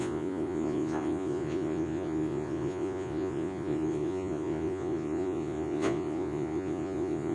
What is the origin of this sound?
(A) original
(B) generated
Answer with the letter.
B